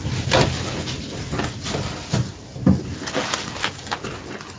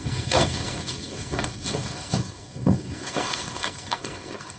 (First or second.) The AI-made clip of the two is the second